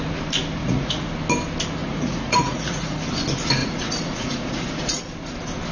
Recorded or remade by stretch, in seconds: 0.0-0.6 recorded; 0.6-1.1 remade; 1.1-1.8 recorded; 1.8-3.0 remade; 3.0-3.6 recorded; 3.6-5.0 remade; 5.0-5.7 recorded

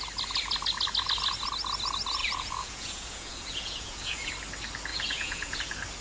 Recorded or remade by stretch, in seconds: 0.0-2.2 recorded; 2.2-4.3 remade; 4.3-4.9 recorded; 4.9-5.6 remade; 5.6-6.0 recorded